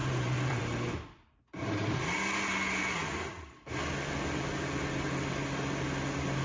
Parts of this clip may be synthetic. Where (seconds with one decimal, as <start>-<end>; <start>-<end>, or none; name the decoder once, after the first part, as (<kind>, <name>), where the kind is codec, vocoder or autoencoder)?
0.0-0.6 (vocoder, BigVGAN v2)